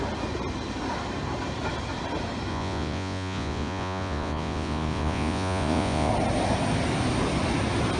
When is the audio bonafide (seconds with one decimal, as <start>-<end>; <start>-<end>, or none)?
0.0-2.5; 6.1-8.0